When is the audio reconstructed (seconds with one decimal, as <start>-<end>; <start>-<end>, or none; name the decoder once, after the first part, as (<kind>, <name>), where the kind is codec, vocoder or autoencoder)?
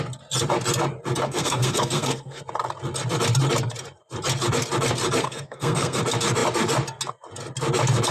1.2-2.4 (codec, SNAC); 5.2-6.0